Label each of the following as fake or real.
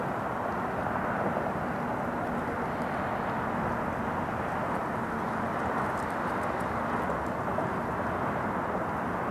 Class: real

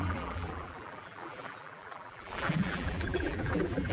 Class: fake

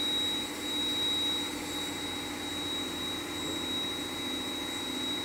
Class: real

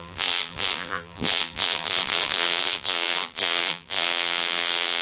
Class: fake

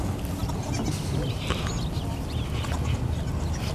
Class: real